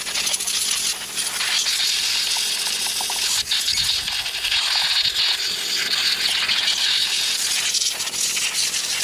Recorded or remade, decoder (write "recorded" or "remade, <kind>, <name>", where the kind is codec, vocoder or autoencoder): recorded